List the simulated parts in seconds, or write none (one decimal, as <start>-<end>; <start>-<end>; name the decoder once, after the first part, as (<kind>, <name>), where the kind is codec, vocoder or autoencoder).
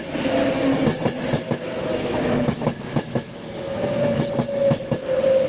0.9-4.2 (autoencoder, DAC-VAE)